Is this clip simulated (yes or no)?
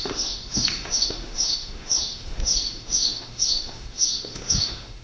yes